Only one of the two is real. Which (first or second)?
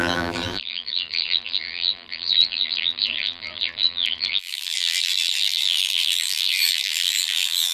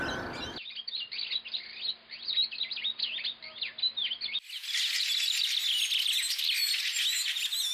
second